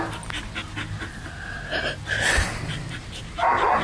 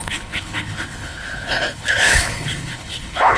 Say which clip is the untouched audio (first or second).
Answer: first